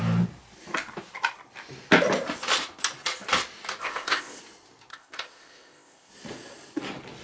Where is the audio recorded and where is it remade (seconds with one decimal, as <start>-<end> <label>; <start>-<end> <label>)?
0.0-3.8 recorded; 3.8-4.4 remade; 4.4-4.9 recorded; 4.9-6.1 remade; 6.1-7.2 recorded